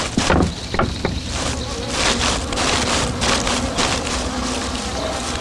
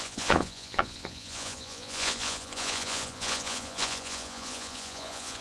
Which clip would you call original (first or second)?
first